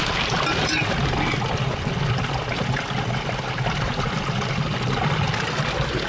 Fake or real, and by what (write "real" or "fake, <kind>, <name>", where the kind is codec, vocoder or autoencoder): real